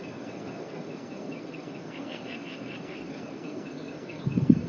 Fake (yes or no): yes